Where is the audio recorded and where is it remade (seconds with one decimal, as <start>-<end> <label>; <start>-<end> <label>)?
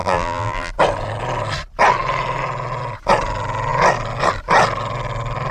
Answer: 0.0-0.7 remade; 0.7-5.5 recorded